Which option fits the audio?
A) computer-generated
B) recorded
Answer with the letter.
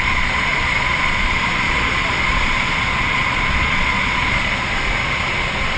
A